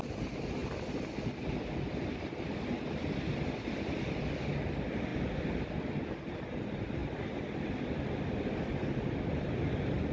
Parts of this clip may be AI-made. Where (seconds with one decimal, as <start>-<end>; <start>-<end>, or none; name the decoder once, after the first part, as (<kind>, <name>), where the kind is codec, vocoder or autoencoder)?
none